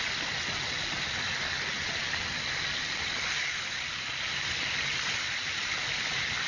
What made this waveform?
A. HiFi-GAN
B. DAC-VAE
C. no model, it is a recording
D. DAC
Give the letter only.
C